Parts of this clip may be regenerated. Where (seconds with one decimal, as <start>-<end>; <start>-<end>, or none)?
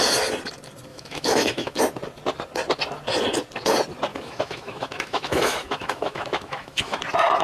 0.9-1.8; 4.1-7.0